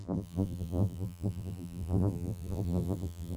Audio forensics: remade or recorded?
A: remade